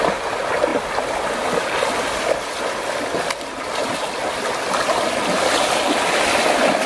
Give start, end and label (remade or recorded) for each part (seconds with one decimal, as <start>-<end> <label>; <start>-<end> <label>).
0.0-6.9 recorded